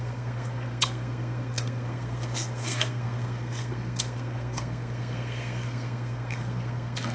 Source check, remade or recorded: remade